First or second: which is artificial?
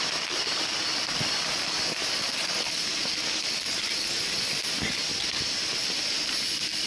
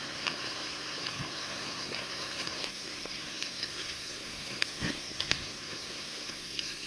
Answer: second